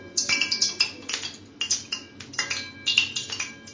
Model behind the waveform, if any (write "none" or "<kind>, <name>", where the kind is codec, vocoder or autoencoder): none